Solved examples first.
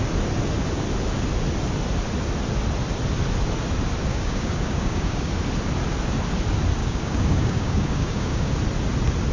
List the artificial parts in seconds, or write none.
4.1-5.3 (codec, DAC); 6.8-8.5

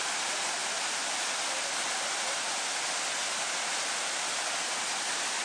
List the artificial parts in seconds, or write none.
none